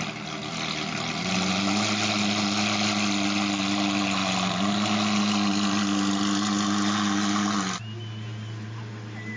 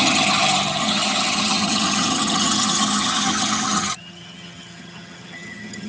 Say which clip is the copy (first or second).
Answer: second